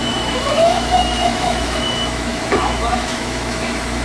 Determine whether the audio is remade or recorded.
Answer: remade